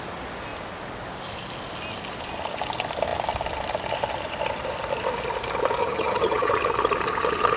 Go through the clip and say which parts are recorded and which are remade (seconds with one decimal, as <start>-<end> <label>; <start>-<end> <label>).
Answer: 0.0-5.8 recorded; 5.8-6.5 remade; 6.5-7.6 recorded